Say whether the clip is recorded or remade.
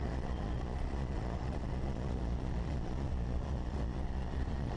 remade